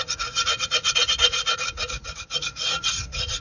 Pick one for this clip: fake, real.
fake